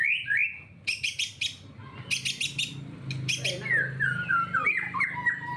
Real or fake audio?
real